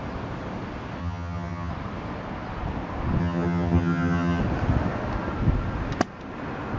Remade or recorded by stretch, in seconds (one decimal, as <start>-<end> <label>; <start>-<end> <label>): 0.0-1.0 recorded; 1.0-1.7 remade; 1.7-3.2 recorded; 3.2-4.4 remade; 4.4-6.8 recorded